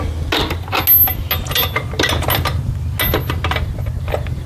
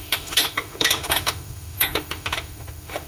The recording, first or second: first